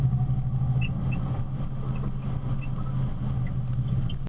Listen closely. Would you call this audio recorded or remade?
recorded